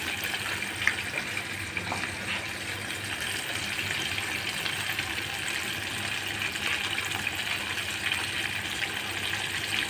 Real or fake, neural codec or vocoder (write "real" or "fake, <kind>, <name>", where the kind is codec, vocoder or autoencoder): real